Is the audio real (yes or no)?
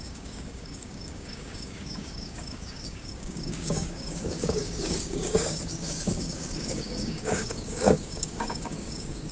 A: no